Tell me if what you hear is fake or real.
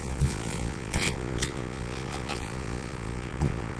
fake